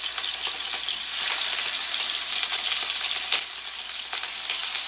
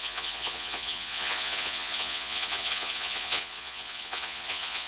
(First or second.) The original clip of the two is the first